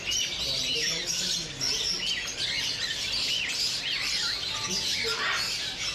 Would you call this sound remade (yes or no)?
no